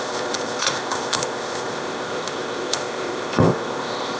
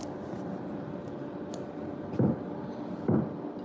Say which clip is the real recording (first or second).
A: second